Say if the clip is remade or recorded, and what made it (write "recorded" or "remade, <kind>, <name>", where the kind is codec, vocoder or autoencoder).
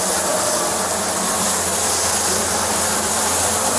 recorded